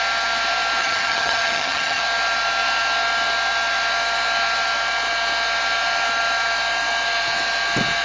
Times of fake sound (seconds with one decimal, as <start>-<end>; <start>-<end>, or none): 0.8-2.0